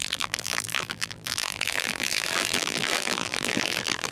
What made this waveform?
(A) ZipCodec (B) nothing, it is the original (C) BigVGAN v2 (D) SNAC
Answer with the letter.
C